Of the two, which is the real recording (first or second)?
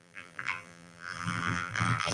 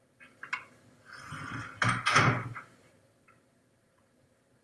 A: second